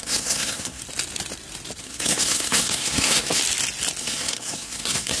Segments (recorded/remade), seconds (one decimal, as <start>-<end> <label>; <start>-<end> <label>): 0.0-0.8 remade; 0.8-1.8 recorded; 1.8-3.4 remade; 3.4-4.0 recorded; 4.0-5.2 remade